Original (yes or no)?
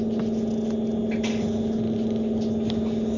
yes